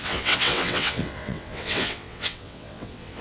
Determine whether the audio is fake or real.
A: fake